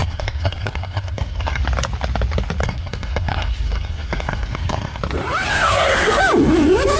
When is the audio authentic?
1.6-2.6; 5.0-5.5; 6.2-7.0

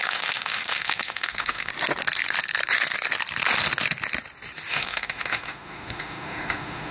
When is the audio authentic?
1.7-4.7

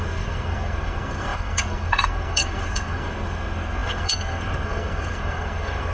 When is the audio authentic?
none

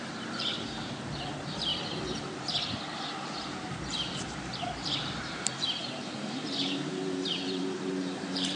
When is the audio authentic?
1.7-2.8